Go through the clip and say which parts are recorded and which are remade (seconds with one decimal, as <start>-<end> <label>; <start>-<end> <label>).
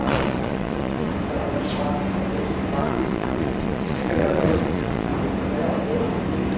0.0-1.1 remade; 1.1-2.8 recorded; 2.8-5.1 remade; 5.1-6.6 recorded